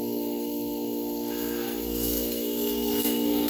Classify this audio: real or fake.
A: fake